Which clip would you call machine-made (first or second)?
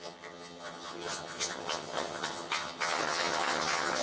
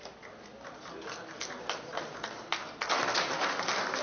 first